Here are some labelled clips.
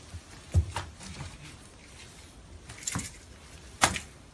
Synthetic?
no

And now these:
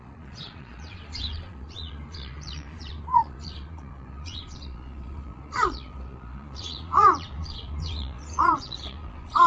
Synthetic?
yes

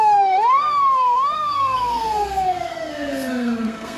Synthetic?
yes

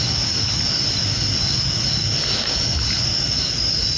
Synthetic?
no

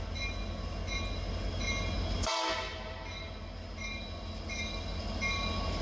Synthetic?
no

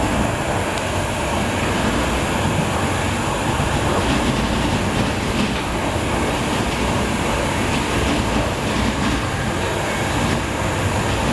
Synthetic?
no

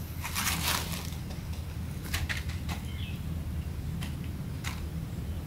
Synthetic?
yes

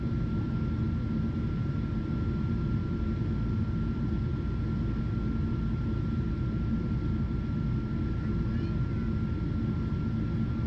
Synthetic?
no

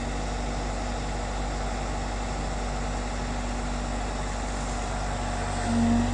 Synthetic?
no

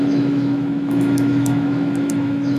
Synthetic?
yes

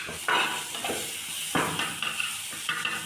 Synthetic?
no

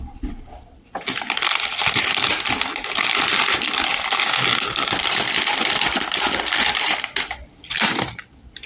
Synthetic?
yes